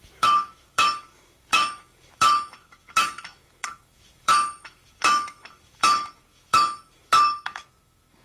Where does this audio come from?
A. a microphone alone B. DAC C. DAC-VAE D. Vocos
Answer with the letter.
C